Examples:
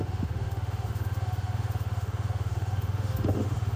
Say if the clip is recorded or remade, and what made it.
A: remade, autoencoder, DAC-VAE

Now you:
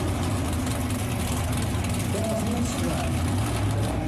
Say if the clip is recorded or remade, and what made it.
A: recorded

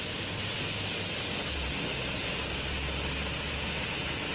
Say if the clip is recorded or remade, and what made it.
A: recorded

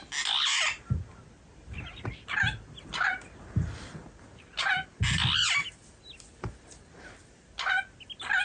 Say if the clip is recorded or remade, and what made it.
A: recorded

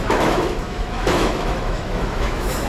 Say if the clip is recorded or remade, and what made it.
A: remade, autoencoder, DAC-VAE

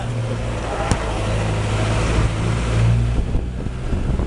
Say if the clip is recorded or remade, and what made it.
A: recorded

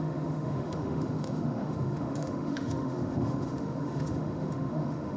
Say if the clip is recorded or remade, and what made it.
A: remade, autoencoder, DAC-VAE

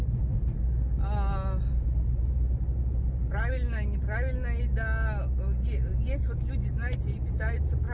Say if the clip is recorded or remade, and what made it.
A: recorded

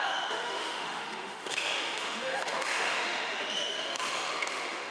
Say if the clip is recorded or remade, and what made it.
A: remade, autoencoder, DAC-VAE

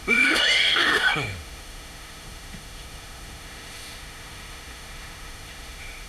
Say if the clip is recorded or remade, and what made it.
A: remade, autoencoder, DAC-VAE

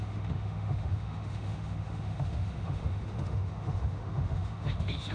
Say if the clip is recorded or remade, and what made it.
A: remade, autoencoder, DAC-VAE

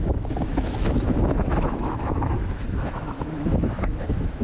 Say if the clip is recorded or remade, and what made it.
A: remade, autoencoder, DAC-VAE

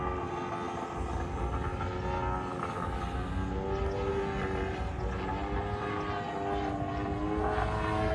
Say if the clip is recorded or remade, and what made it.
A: recorded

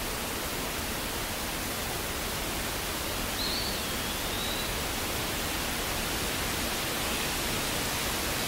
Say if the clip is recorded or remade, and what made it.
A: recorded